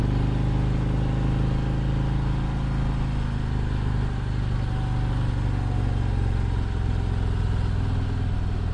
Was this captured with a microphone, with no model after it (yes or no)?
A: yes